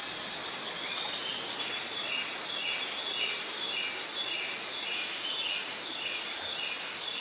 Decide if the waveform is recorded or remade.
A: recorded